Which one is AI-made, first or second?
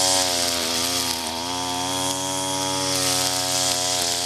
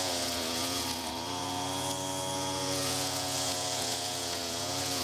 second